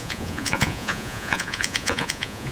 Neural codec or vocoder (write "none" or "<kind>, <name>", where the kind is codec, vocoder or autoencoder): vocoder, Vocos